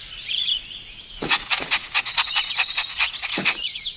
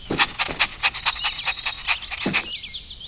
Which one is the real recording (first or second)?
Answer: second